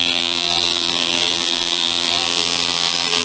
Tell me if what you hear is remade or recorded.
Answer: remade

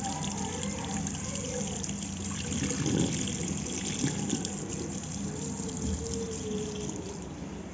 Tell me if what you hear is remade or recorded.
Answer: recorded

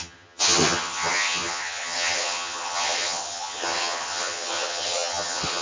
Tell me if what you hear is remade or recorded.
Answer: remade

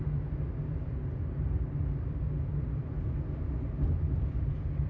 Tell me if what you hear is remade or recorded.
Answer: recorded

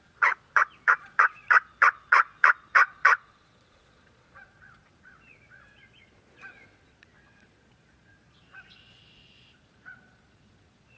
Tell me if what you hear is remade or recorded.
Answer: remade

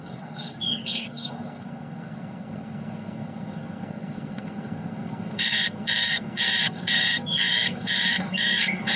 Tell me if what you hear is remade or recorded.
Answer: remade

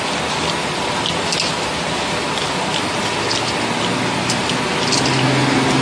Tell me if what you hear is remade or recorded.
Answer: recorded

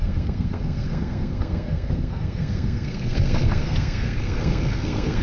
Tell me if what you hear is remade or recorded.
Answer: remade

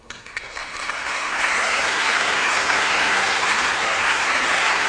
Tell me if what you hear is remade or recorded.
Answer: remade